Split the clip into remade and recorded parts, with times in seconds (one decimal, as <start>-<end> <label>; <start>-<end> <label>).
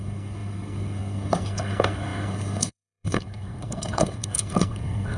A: 0.0-5.2 remade